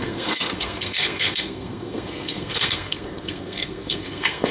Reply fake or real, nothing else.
fake